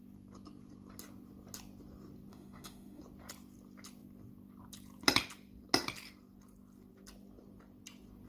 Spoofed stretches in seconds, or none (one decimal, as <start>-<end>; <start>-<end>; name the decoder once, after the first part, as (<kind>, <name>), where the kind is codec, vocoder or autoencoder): 2.3-3.0 (autoencoder, DAC-VAE)